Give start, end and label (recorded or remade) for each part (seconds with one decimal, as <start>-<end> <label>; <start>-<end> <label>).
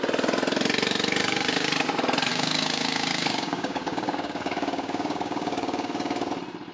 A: 0.0-1.2 recorded; 1.2-1.7 remade; 1.7-2.3 recorded; 2.3-6.3 remade; 6.3-6.7 recorded